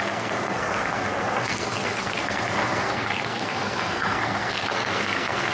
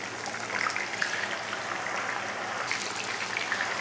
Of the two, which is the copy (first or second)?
first